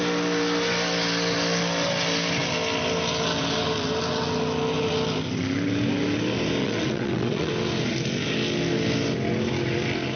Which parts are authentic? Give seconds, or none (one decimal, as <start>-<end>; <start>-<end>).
0.0-6.6; 7.5-10.2